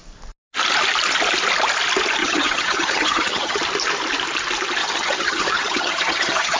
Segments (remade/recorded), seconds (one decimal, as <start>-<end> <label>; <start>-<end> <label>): 0.0-2.2 recorded; 2.2-3.6 remade; 3.6-4.8 recorded; 4.8-6.6 remade